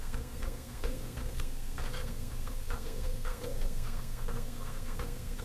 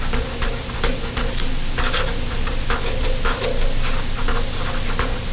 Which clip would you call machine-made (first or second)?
first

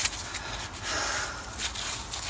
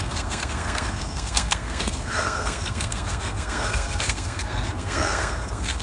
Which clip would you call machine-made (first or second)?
second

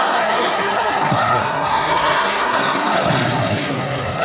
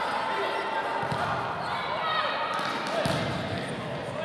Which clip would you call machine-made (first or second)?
first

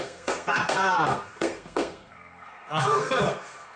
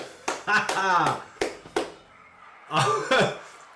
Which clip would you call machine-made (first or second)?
first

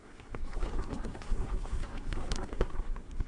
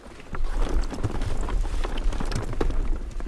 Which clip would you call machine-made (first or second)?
first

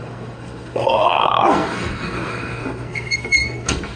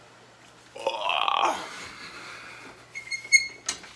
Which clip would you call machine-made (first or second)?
first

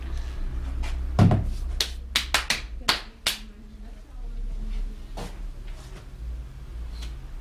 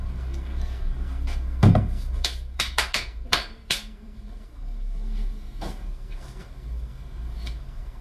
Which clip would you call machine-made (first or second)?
second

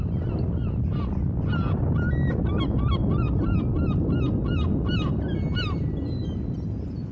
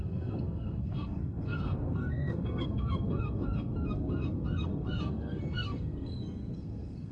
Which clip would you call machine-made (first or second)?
second